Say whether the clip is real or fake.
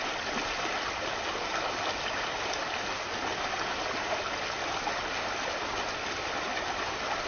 real